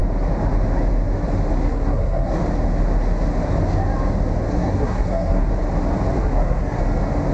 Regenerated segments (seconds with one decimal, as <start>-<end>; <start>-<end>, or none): 1.5-2.4; 4.5-5.5; 6.2-6.8